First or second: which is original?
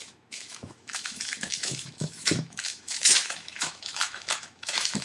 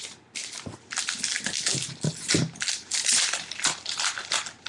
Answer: second